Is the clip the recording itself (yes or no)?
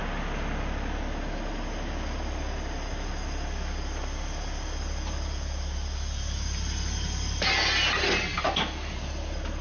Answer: yes